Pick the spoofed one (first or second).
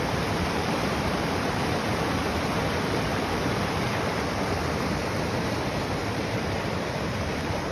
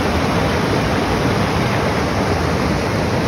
first